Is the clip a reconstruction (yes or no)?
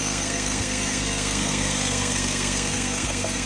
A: yes